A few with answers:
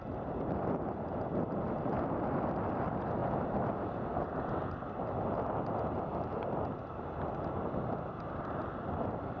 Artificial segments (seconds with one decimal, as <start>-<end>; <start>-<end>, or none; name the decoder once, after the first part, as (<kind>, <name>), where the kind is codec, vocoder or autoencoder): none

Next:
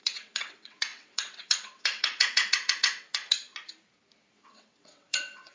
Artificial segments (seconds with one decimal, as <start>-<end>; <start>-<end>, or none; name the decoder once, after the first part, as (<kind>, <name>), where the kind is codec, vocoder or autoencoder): 0.0-3.5 (vocoder, WaveNeXt); 4.3-5.5

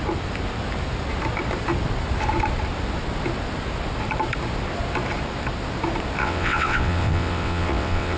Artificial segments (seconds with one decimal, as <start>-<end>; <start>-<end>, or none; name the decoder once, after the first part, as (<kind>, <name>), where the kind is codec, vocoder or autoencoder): 6.2-8.2 (vocoder, WaveNeXt)